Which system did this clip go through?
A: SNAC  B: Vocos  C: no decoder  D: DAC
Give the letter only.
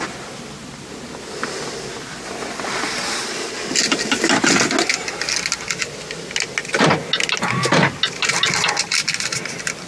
C